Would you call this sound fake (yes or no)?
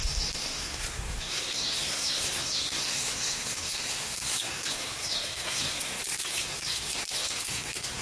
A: yes